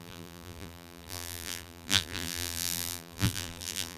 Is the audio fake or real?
fake